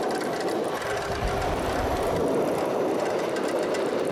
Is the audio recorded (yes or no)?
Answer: yes